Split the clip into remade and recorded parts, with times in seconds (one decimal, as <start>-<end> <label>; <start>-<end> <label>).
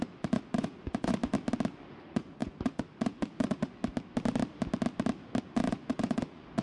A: 0.0-1.2 remade; 1.2-1.8 recorded; 1.8-3.8 remade; 3.8-5.4 recorded; 5.4-6.6 remade